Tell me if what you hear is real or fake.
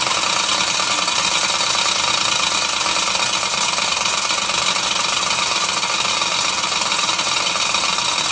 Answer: real